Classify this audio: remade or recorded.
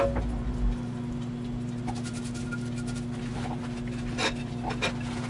recorded